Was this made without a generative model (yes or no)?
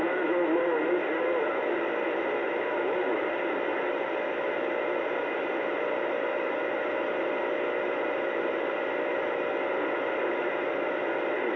yes